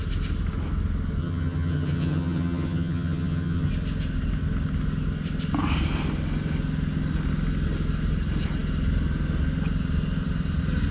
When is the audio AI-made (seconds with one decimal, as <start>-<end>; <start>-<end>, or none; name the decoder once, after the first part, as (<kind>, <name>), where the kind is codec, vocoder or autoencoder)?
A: 1.2-3.7 (vocoder, HiFi-GAN)